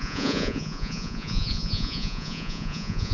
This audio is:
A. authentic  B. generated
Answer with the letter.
B